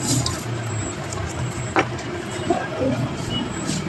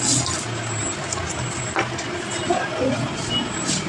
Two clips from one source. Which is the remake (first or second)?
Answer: first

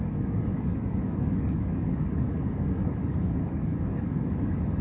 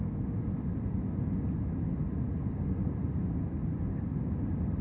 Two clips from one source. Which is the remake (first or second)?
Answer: first